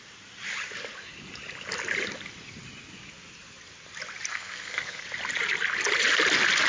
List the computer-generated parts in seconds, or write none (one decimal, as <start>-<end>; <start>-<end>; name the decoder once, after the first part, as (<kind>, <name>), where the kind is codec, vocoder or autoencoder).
4.3-5.0 (codec, SNAC)